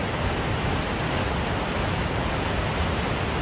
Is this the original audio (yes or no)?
yes